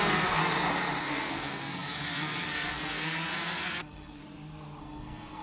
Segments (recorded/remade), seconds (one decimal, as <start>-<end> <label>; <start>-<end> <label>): 0.0-0.4 remade; 0.4-1.0 recorded; 1.0-4.2 remade; 4.2-4.8 recorded; 4.8-5.4 remade